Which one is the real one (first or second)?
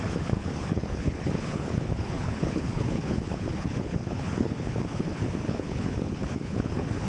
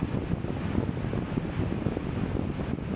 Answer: second